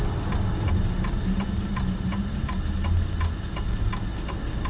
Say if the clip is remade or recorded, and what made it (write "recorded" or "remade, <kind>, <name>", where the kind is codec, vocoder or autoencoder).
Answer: recorded